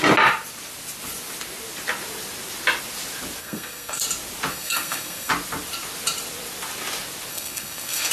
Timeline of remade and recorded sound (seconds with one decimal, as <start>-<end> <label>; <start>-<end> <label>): 0.0-3.4 recorded; 3.4-4.0 remade; 4.0-4.5 recorded; 4.5-5.3 remade; 5.3-7.3 recorded; 7.3-8.1 remade